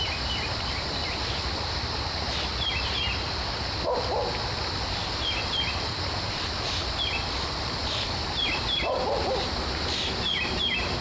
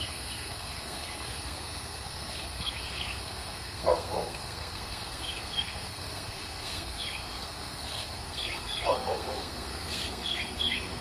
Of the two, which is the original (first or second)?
first